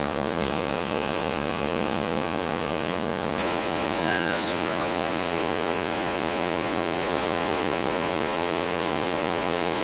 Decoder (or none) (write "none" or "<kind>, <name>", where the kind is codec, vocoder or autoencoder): vocoder, Vocos